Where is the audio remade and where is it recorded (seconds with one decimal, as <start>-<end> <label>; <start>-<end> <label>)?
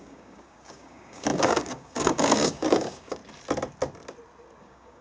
0.0-3.2 remade; 3.2-4.6 recorded; 4.6-5.0 remade